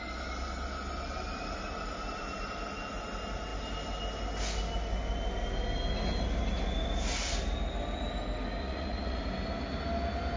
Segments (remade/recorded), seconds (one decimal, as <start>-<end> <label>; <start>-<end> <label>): 0.0-8.6 recorded; 8.6-9.2 remade; 9.2-10.4 recorded